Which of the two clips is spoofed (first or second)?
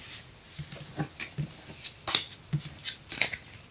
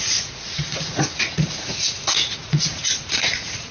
second